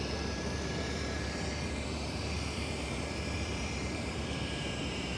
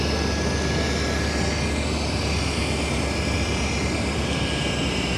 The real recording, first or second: second